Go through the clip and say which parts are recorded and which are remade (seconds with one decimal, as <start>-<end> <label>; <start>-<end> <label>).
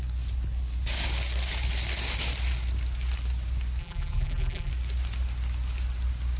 0.0-3.8 recorded; 3.8-4.7 remade; 4.7-6.4 recorded